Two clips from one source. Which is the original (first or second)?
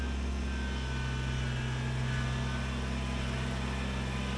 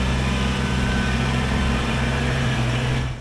first